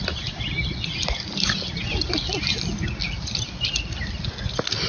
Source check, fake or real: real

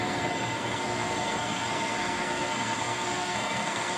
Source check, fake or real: fake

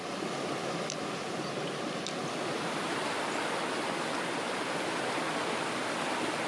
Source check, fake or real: real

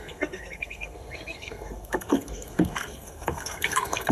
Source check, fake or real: fake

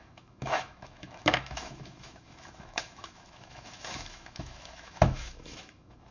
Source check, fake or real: fake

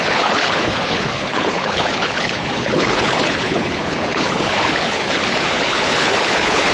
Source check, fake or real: fake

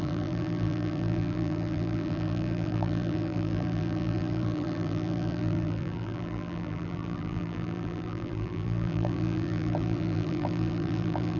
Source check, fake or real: fake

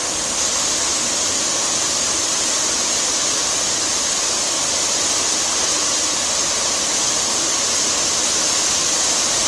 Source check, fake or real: real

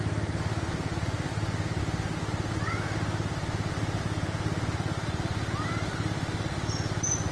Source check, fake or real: real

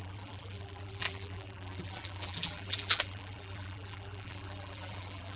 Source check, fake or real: fake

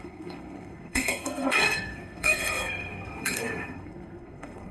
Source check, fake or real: fake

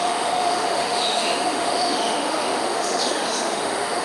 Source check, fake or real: fake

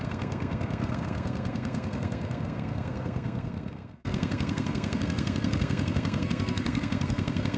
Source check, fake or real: fake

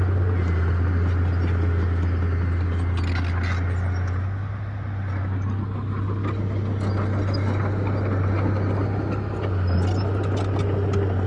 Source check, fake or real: real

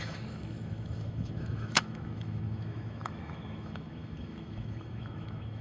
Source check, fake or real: fake